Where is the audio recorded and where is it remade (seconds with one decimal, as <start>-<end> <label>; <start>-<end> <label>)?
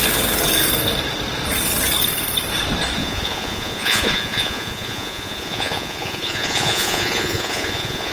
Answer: 0.0-3.0 recorded; 3.0-8.1 remade